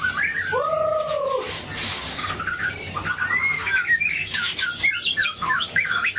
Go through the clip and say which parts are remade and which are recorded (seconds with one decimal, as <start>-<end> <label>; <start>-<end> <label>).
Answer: 0.0-3.4 recorded; 3.4-4.6 remade; 4.6-5.2 recorded; 5.2-6.2 remade